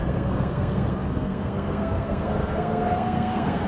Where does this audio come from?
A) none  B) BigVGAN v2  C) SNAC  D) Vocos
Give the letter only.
C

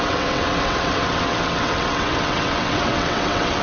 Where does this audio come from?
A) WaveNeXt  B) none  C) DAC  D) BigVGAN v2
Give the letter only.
A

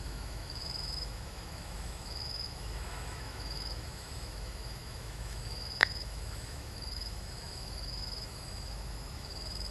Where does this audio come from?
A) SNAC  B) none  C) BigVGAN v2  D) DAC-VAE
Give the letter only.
D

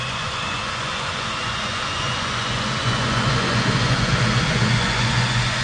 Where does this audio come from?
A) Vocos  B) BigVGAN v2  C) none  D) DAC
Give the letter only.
A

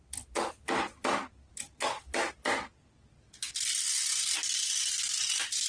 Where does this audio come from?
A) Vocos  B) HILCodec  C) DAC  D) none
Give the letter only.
D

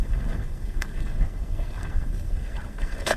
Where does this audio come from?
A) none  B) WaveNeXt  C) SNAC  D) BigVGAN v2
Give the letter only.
C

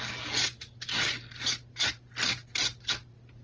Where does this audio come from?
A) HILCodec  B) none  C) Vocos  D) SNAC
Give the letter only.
B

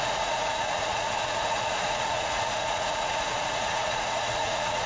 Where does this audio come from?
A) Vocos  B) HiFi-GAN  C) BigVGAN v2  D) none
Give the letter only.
A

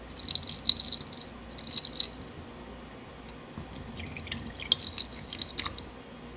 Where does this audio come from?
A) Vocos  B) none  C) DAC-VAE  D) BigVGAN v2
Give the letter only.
B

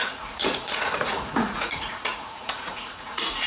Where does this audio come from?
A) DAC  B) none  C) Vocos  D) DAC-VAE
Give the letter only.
C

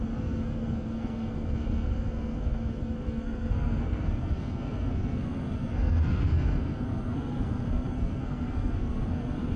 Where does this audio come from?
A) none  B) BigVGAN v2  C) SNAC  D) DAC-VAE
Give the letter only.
C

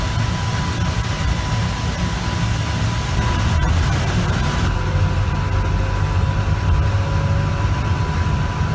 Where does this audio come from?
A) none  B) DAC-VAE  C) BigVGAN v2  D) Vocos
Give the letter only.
A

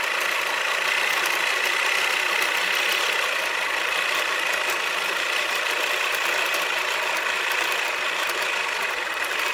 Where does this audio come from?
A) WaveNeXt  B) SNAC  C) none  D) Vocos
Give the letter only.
C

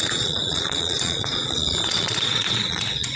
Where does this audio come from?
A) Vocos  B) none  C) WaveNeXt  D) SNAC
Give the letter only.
A